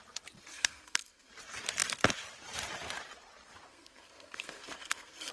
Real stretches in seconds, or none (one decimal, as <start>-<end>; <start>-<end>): 0.0-0.5; 1.3-3.7